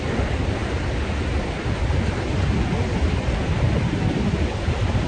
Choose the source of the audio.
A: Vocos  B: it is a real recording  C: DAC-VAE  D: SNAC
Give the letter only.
B